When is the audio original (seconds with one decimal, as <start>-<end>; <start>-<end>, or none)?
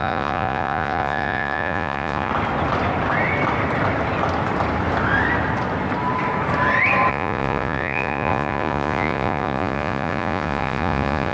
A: 2.3-7.1